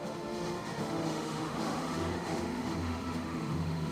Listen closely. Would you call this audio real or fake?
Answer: fake